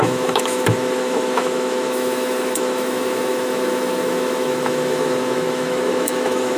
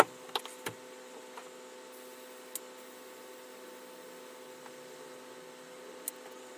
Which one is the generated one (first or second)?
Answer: first